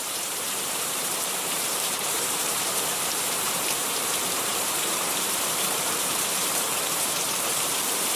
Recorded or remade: remade